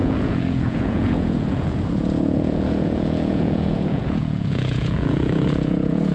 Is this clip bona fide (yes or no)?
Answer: no